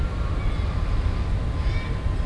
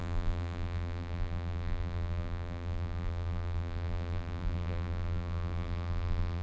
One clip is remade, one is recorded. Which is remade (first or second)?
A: second